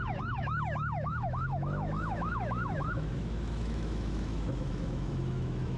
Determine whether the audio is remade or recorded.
remade